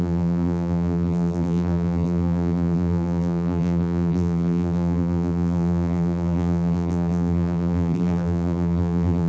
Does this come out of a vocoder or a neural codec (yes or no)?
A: yes